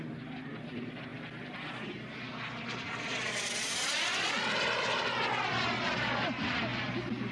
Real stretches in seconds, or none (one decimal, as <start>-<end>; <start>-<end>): 0.0-7.3